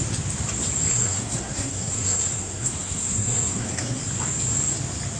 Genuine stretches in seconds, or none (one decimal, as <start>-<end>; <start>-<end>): 0.0-0.9; 4.0-5.2